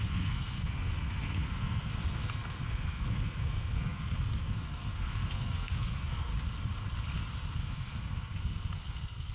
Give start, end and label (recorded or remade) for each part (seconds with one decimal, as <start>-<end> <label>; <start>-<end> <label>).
0.0-6.3 remade; 6.3-7.5 recorded; 7.5-9.3 remade